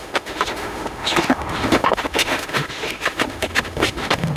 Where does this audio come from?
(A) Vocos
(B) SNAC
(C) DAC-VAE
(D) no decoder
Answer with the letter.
C